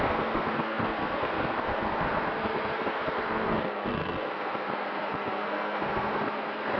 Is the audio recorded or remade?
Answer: remade